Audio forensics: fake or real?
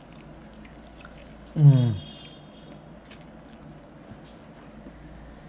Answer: real